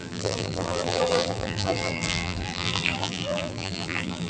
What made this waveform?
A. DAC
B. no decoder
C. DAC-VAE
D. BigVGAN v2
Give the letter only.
D